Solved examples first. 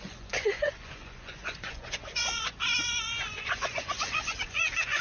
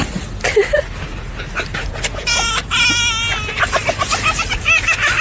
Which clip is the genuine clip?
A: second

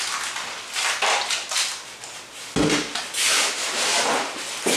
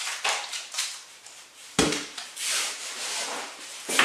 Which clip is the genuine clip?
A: first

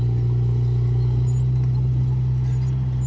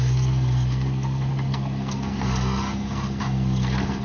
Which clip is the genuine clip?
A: first